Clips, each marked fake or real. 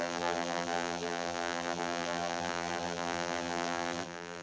fake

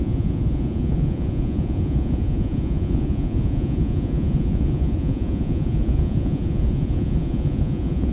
fake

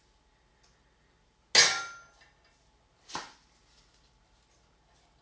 real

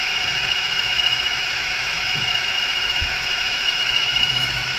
fake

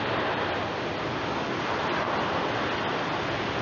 real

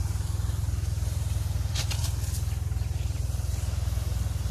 real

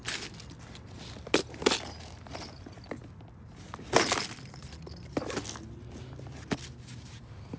real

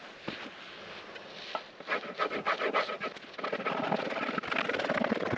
real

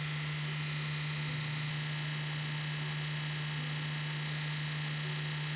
real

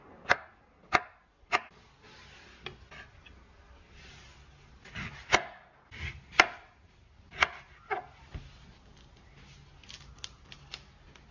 real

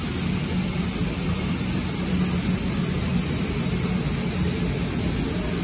real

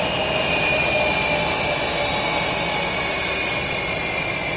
real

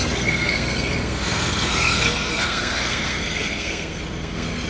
fake